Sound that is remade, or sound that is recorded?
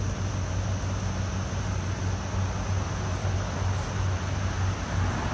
recorded